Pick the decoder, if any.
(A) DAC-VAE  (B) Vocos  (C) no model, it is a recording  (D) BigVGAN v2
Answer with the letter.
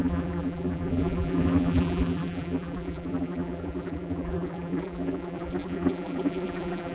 D